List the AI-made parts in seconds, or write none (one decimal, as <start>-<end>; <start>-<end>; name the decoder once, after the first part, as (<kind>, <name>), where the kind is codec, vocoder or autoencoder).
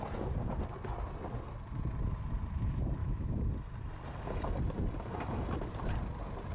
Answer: 3.0-3.5 (autoencoder, DAC-VAE)